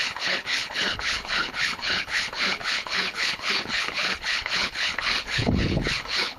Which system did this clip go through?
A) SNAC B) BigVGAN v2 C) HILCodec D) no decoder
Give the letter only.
C